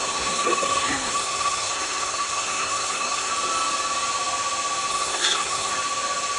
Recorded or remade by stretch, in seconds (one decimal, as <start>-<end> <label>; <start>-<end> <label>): 0.0-3.3 remade; 3.3-4.9 recorded; 4.9-5.7 remade; 5.7-6.4 recorded